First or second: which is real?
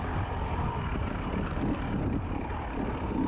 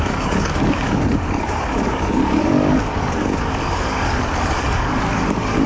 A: first